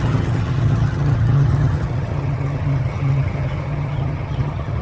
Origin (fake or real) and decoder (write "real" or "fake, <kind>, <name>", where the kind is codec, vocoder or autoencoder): fake, vocoder, HiFi-GAN